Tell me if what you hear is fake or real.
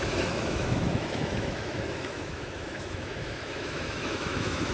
fake